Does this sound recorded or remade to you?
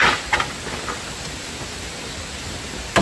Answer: recorded